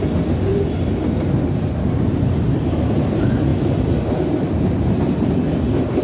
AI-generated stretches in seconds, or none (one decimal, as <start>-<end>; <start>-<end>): none